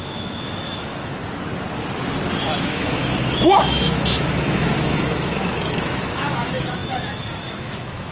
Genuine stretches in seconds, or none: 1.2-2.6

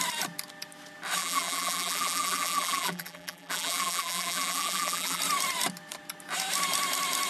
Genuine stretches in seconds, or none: 0.0-1.2; 5.2-7.3

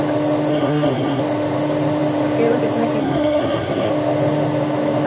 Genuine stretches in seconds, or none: 0.0-0.5; 1.2-3.0; 3.9-5.1

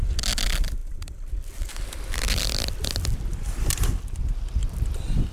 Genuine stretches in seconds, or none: 0.0-0.8; 1.8-4.6

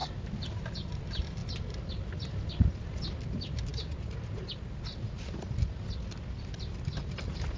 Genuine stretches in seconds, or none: 0.0-7.6

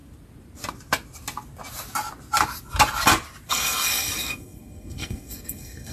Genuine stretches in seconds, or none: 0.0-3.5

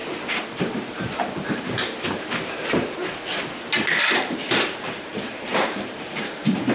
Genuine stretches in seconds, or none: 0.0-4.0

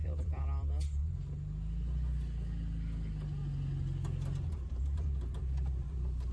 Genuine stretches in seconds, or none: 1.0-4.8